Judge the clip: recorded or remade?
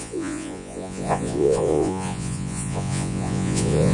remade